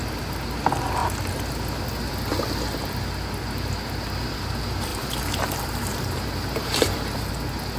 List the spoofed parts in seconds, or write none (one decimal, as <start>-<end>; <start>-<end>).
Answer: 4.9-7.0